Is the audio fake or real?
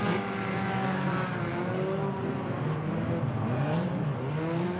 real